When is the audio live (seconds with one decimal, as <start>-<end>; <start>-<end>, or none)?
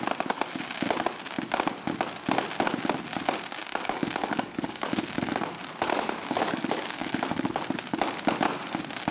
0.0-3.6; 7.6-9.1